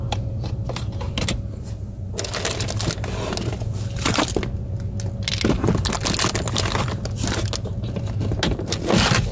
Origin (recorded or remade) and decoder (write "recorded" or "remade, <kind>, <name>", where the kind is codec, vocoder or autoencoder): recorded